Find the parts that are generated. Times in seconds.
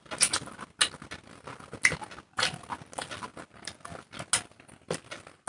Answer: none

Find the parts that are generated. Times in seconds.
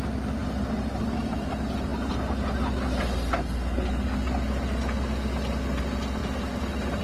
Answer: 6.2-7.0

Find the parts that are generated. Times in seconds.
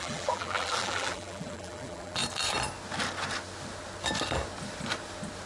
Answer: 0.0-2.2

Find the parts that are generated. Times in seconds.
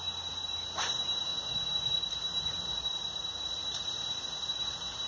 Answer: none